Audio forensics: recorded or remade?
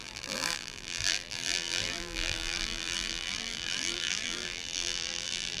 remade